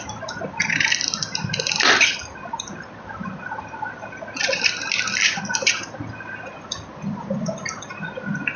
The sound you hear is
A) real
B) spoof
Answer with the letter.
A